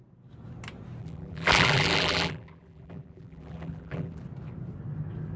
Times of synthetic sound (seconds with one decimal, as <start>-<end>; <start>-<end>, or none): 1.0-4.2